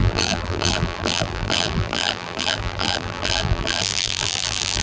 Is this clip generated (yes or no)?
yes